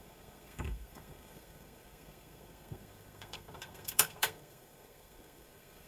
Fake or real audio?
fake